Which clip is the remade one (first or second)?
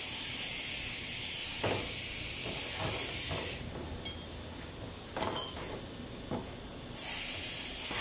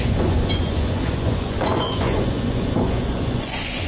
second